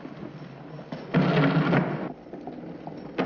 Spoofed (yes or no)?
no